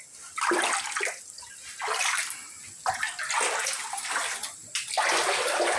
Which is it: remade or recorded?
recorded